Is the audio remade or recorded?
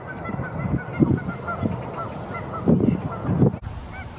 recorded